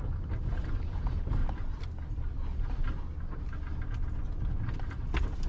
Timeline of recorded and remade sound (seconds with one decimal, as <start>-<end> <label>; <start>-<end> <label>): 0.0-1.4 remade; 1.4-4.7 recorded; 4.7-5.5 remade